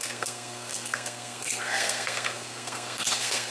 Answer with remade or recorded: remade